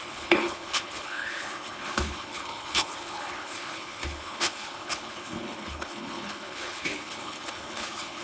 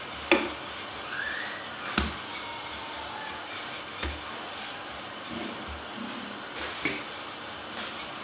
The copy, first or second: first